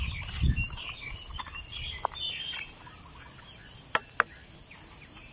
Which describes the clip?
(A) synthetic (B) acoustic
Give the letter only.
B